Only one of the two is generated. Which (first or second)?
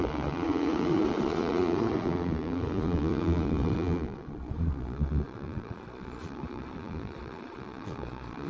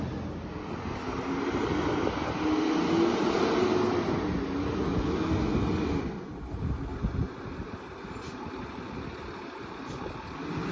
first